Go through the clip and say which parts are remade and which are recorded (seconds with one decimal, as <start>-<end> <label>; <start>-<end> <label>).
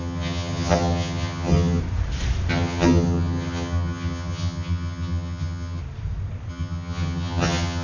0.0-1.8 remade; 1.8-2.5 recorded; 2.5-5.8 remade; 5.8-6.5 recorded; 6.5-7.8 remade